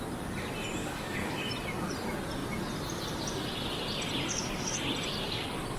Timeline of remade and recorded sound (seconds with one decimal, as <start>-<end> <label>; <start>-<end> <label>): 0.0-0.8 recorded; 0.8-1.5 remade; 1.5-5.8 recorded